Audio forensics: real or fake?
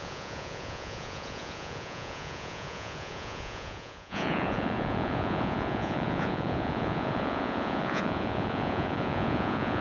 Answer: fake